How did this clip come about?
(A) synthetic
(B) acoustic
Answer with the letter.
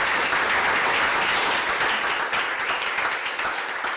B